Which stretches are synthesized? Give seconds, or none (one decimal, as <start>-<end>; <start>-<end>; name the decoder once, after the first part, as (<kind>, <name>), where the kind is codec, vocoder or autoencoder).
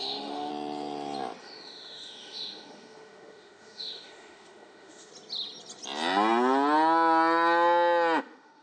0.0-0.5 (autoencoder, DAC-VAE); 1.4-5.1; 8.2-8.6